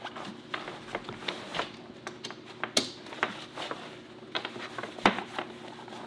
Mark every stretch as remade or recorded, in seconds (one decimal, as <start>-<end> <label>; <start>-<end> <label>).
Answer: 0.0-6.1 recorded